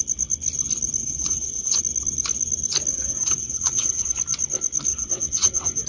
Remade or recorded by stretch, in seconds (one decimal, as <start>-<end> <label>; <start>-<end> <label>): 0.0-1.0 recorded; 1.0-1.8 remade; 1.8-2.9 recorded; 2.9-4.1 remade; 4.1-4.9 recorded; 4.9-5.9 remade